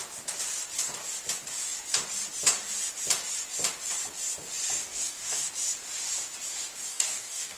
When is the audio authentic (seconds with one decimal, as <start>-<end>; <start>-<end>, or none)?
0.0-4.8; 5.5-6.9